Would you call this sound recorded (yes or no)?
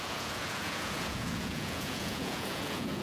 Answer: no